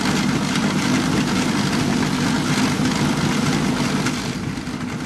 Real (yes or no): yes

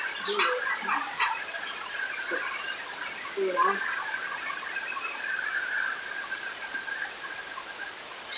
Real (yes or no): yes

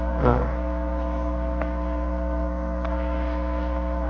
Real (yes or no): no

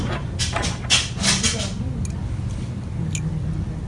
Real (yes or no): yes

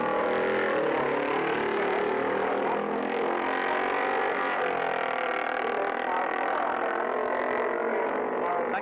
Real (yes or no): yes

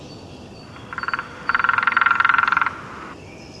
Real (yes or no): yes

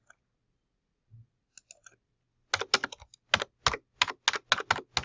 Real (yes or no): yes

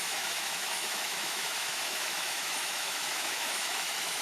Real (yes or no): no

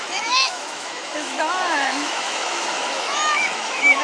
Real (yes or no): no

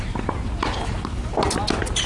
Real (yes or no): yes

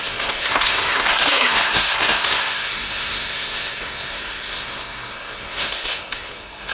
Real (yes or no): no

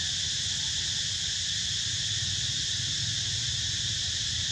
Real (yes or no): yes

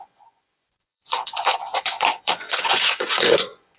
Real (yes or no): no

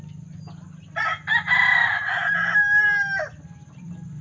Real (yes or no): yes